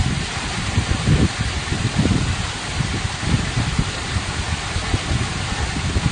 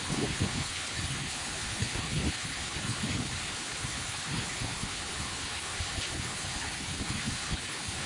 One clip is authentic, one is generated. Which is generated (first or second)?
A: second